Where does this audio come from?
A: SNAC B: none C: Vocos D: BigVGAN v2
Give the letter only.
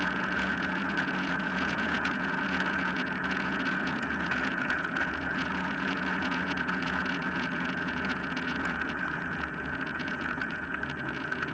C